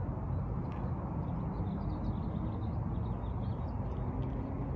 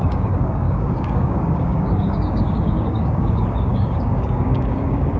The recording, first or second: first